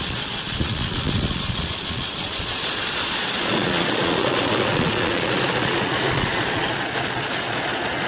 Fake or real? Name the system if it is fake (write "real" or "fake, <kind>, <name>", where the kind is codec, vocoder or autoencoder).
fake, vocoder, Vocos